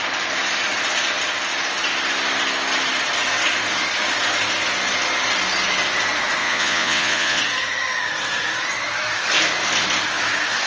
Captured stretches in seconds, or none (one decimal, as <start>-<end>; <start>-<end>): 0.0-6.4; 7.4-10.7